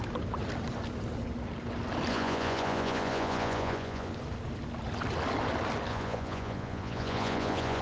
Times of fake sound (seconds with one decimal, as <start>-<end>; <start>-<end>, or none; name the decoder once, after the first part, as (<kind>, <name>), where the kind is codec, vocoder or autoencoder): 2.1-4.1 (vocoder, Vocos); 5.9-7.8